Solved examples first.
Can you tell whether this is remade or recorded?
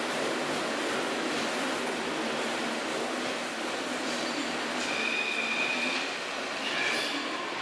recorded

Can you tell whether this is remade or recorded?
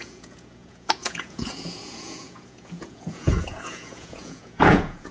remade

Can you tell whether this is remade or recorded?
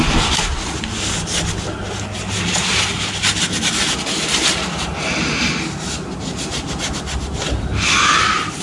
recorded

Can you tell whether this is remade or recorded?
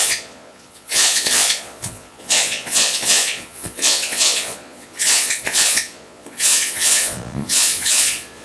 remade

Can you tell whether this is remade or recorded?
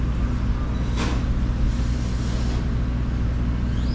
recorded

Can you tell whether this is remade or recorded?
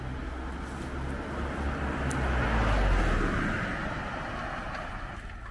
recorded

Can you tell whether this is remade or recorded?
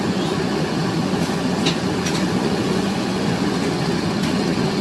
remade